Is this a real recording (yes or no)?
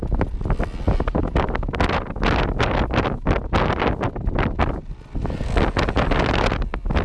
yes